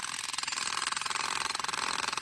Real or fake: real